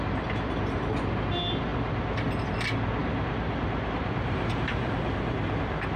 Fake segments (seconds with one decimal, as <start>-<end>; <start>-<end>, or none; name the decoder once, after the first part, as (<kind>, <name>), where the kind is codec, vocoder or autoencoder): 3.0-5.1 (vocoder, BigVGAN v2)